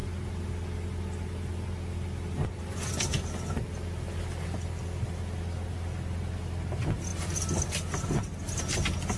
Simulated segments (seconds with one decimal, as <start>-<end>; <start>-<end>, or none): none